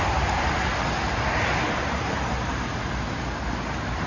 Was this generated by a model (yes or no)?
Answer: yes